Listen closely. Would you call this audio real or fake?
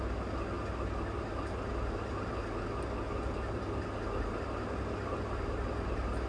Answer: real